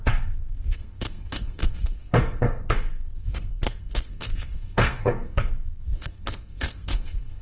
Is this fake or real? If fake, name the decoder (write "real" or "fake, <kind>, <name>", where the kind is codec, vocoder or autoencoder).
fake, codec, SNAC